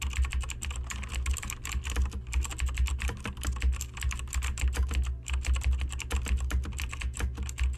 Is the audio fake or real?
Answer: real